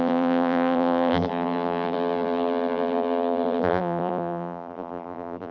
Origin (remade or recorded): remade